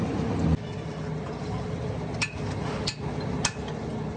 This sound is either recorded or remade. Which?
recorded